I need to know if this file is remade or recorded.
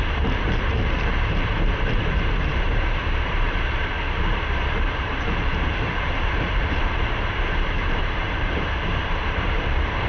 remade